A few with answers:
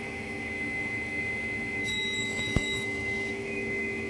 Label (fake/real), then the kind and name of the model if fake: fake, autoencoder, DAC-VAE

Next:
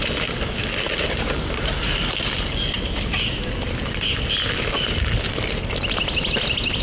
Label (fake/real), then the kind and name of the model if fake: real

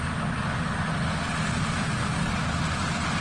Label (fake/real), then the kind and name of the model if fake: real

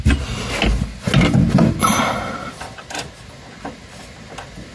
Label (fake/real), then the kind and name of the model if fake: real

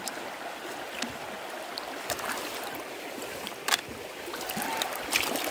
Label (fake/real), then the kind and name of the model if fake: real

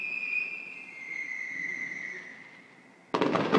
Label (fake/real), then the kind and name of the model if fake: real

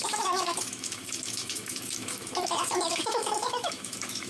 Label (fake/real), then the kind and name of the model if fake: fake, autoencoder, DAC-VAE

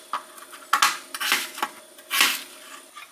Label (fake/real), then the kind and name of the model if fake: real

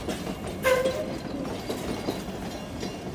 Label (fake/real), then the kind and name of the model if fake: real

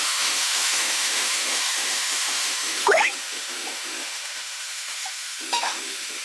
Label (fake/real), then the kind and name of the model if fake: fake, autoencoder, DAC-VAE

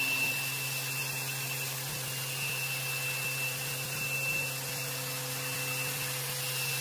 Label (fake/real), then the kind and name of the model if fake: real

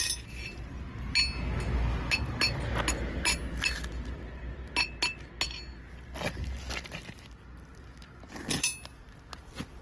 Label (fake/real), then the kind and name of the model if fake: real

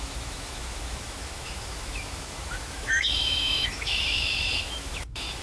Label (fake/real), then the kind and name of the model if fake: fake, autoencoder, DAC-VAE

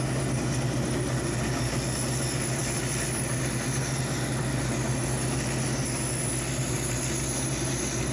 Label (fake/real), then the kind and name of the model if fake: real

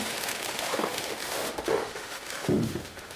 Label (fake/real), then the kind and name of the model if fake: fake, autoencoder, DAC-VAE